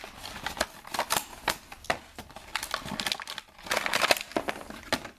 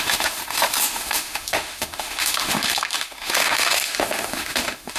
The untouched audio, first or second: first